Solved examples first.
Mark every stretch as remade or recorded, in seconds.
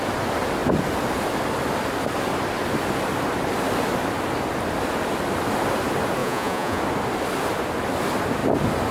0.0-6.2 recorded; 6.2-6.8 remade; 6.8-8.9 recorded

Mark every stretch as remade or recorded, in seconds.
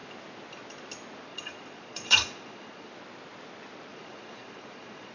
0.0-1.3 recorded; 1.3-2.9 remade; 2.9-3.9 recorded; 3.9-5.1 remade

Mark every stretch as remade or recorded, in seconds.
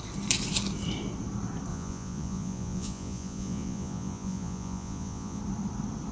0.0-1.7 recorded; 1.7-5.4 remade; 5.4-6.1 recorded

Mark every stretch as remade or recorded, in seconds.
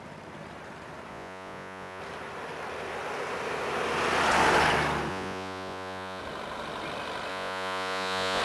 0.0-1.1 recorded; 1.1-2.0 remade; 2.0-5.1 recorded; 5.1-6.2 remade; 6.2-7.3 recorded; 7.3-8.4 remade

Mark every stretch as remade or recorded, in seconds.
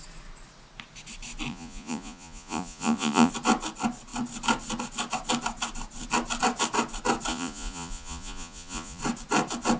0.0-1.5 recorded; 1.5-3.3 remade; 3.3-7.3 recorded; 7.3-9.0 remade; 9.0-9.8 recorded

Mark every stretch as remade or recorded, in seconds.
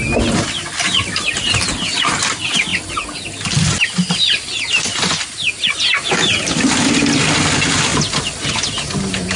0.0-9.4 recorded